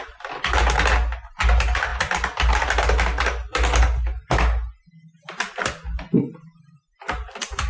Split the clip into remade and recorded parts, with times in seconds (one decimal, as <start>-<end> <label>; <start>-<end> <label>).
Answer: 0.0-7.7 recorded